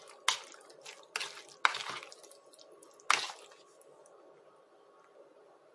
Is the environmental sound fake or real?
real